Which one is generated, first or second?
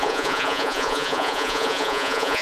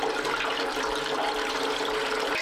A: first